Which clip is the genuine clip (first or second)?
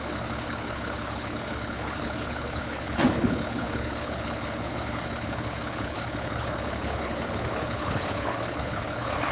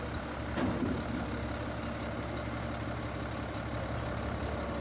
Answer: second